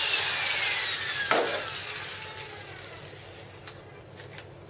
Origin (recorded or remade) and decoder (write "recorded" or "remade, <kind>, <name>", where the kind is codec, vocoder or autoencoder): recorded